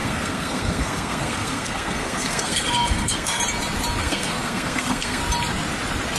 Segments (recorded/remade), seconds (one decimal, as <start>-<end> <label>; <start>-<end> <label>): 0.0-3.4 remade; 3.4-4.0 recorded; 4.0-5.2 remade; 5.2-6.2 recorded